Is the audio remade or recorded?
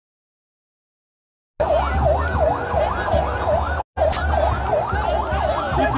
recorded